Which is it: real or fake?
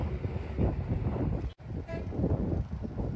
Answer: real